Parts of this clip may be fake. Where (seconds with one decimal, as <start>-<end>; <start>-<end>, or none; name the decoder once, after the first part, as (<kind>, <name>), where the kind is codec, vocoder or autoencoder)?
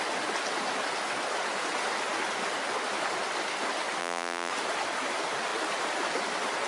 4.0-4.5 (vocoder, BigVGAN v2)